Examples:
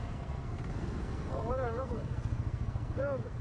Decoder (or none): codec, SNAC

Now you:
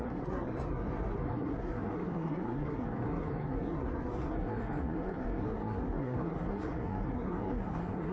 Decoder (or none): codec, SNAC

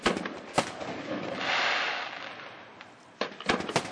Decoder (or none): none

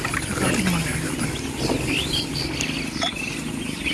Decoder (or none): none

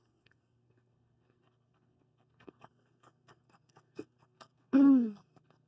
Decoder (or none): codec, SNAC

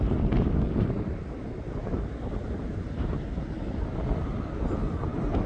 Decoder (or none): none